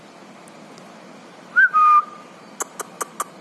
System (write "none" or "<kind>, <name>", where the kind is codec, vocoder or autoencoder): none